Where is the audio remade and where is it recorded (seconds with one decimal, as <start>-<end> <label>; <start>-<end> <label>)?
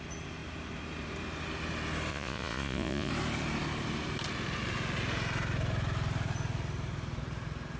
0.0-2.1 recorded; 2.1-3.1 remade; 3.1-7.8 recorded